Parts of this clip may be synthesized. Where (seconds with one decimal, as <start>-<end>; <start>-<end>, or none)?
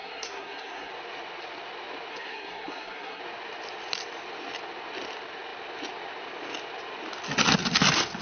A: 0.0-0.9; 2.1-3.2